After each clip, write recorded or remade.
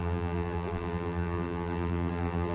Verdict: remade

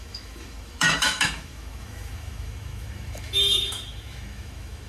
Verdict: remade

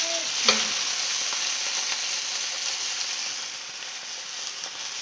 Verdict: recorded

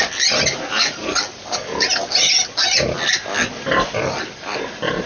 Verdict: recorded